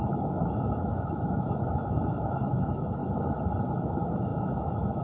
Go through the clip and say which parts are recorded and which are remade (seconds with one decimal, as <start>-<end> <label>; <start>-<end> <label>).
0.0-3.0 remade; 3.0-3.8 recorded; 3.8-5.0 remade